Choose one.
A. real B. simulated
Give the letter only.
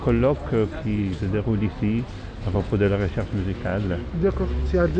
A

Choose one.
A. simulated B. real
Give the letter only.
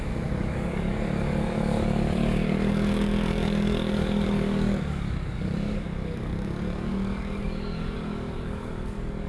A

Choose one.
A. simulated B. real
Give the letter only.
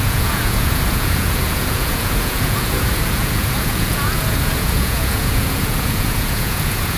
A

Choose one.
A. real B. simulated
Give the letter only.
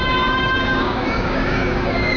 B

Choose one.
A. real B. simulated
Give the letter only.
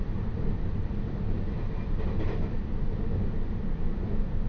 A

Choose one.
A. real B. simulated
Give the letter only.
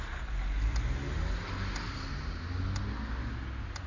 A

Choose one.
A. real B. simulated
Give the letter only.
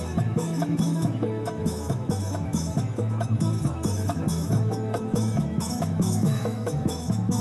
B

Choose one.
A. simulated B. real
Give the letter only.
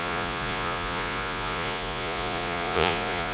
A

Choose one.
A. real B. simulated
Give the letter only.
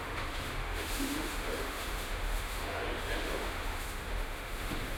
B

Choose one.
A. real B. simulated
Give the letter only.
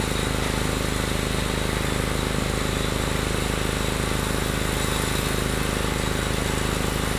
A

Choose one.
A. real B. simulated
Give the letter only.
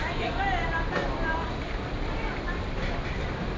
B